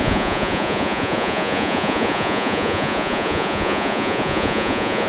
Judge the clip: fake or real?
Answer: fake